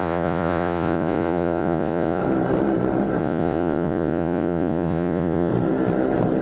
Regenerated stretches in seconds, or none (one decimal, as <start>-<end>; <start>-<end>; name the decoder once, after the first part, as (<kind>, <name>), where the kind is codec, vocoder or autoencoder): 0.0-2.2 (vocoder, Vocos); 3.2-5.5